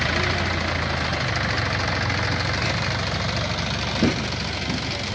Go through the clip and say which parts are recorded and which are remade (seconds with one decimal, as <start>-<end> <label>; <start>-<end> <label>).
0.0-5.1 recorded